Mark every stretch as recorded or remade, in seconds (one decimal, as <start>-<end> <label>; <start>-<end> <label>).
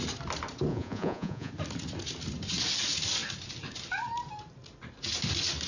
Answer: 0.0-0.7 recorded; 0.7-1.5 remade; 1.5-5.7 recorded